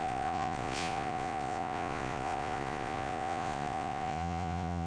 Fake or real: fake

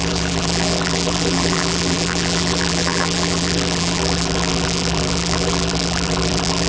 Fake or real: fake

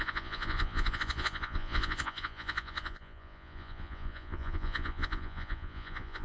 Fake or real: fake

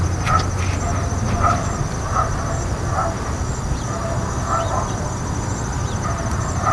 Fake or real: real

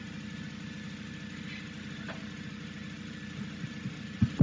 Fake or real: real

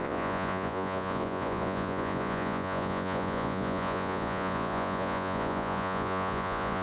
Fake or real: fake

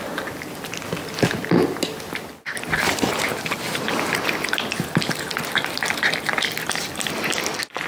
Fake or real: real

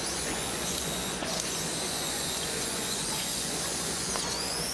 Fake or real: fake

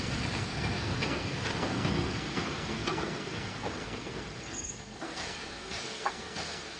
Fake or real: fake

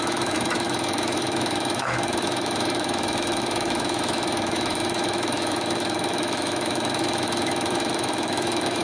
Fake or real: fake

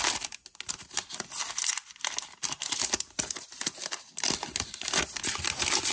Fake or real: real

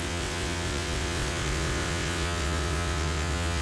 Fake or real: fake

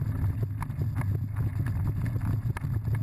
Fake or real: real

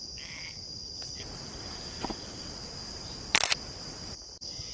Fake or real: fake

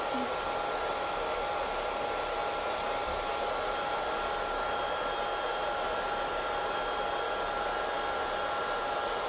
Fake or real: real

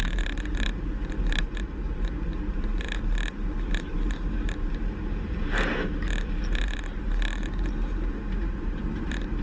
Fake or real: fake